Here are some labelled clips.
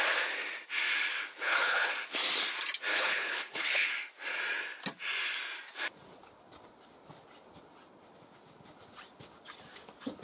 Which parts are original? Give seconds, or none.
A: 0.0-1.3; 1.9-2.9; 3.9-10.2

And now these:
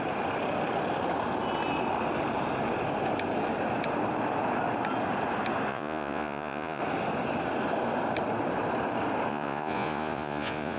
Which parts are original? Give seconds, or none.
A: 0.0-5.7; 6.8-9.3

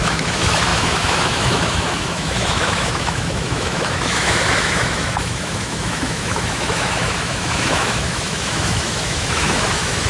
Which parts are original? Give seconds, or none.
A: none

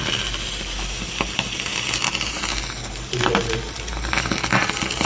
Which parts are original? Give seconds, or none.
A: 0.0-5.1